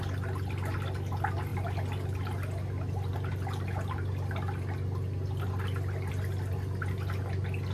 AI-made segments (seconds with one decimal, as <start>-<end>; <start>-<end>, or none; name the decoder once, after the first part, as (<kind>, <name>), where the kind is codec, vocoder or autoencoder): none